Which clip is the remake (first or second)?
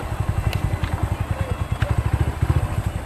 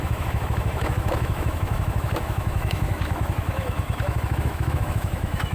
second